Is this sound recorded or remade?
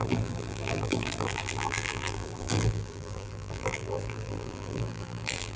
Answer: remade